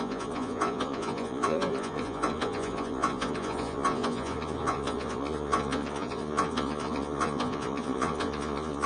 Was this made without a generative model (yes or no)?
no